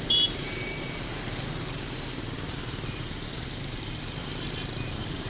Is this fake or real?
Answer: fake